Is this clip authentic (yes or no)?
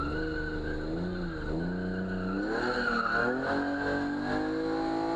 yes